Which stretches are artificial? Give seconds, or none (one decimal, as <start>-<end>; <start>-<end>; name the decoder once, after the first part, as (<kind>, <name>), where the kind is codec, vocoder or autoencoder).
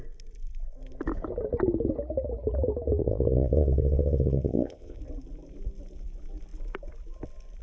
3.0-5.0 (vocoder, Vocos)